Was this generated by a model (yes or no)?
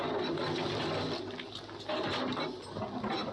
no